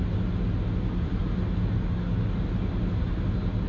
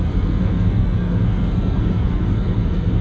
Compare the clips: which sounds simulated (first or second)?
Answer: second